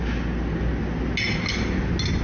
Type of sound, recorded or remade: recorded